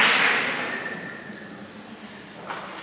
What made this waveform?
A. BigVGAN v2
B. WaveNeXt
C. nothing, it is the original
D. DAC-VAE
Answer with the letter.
C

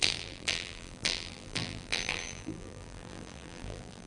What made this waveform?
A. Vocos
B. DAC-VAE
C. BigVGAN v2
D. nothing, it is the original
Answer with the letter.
C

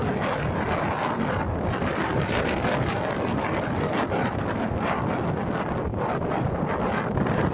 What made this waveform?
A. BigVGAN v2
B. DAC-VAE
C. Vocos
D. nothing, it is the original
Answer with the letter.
D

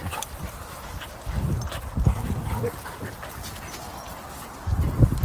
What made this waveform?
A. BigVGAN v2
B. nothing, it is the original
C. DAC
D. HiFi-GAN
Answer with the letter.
B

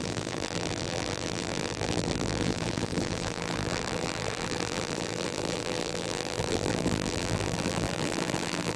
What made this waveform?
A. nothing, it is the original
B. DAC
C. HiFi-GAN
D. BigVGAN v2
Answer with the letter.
D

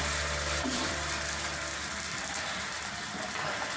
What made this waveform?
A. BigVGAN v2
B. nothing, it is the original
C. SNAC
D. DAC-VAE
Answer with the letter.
A